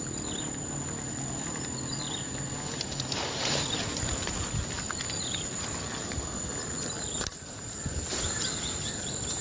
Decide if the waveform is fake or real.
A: real